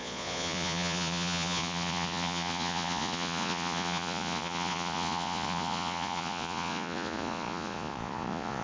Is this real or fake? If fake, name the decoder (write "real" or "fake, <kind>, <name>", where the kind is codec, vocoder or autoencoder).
fake, vocoder, Vocos